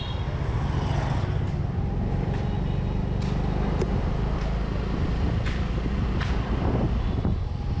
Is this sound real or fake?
real